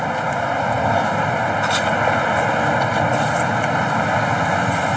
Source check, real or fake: real